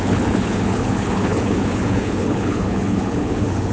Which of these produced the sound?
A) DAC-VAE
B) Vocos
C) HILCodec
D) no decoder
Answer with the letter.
C